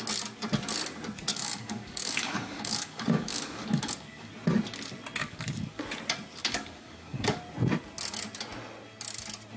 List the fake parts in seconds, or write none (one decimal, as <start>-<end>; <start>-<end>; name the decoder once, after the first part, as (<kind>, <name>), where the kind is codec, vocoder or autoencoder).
1.3-4.3 (codec, DAC); 5.2-5.8; 6.4-7.4